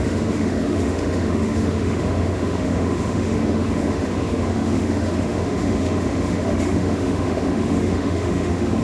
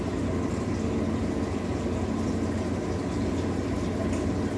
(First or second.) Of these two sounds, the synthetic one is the first